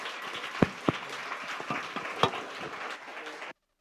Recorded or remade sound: recorded